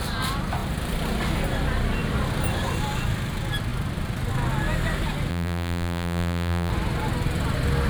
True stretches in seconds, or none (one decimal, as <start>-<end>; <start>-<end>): 0.0-5.3; 6.7-7.9